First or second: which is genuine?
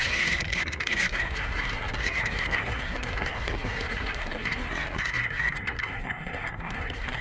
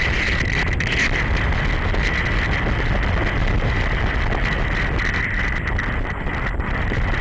second